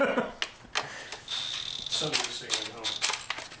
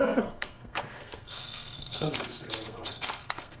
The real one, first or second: first